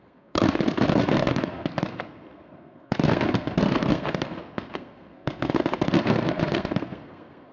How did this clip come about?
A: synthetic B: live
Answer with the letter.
A